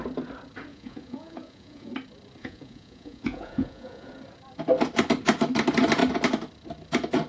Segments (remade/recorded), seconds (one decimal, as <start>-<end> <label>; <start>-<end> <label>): 0.0-0.7 recorded; 0.7-1.9 remade; 1.9-2.4 recorded; 2.4-4.1 remade; 4.1-7.3 recorded